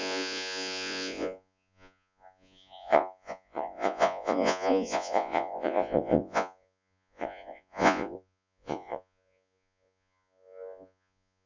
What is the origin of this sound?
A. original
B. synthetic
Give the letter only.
B